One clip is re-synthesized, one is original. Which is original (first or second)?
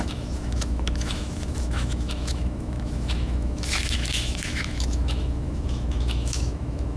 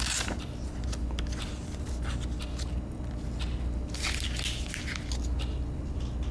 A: second